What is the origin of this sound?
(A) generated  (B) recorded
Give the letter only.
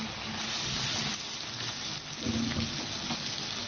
B